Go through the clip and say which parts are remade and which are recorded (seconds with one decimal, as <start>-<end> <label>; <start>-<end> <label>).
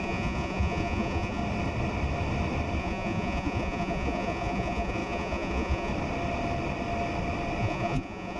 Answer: 0.0-1.4 remade; 1.4-2.8 recorded; 2.8-5.9 remade; 5.9-7.6 recorded; 7.6-8.4 remade